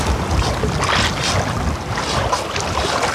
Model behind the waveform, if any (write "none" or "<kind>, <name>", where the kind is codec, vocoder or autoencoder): none